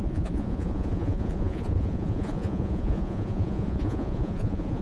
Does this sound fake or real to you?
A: fake